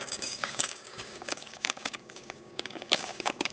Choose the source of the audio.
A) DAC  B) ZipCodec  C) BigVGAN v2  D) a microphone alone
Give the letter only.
A